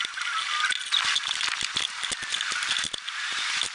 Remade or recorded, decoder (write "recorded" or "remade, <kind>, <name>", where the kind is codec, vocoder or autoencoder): recorded